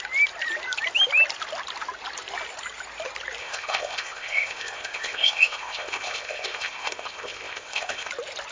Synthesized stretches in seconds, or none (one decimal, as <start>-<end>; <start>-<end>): 3.4-8.1